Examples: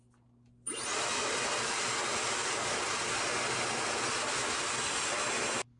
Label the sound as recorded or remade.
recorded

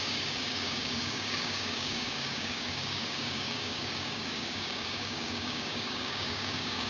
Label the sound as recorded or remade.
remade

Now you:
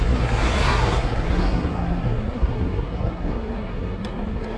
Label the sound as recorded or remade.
remade